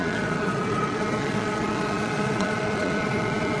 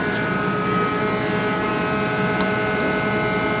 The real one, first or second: second